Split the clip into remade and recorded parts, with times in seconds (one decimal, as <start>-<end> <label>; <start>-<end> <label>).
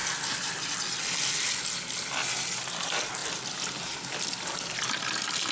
0.0-5.5 recorded